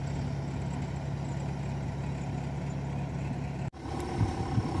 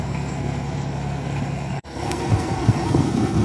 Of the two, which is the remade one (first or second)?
second